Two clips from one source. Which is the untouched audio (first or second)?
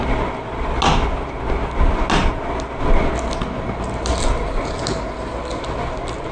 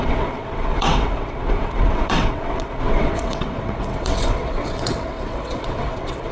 first